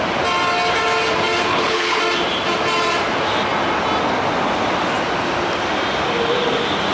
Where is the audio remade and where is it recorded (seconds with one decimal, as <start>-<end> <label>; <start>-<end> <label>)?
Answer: 0.0-1.5 recorded; 1.5-2.0 remade; 2.0-6.9 recorded